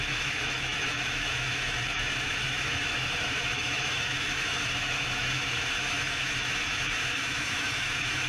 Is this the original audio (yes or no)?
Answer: no